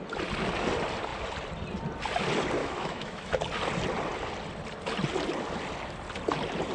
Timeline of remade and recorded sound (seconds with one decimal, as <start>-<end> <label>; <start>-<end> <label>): 0.0-2.6 recorded; 2.6-3.4 remade; 3.4-6.7 recorded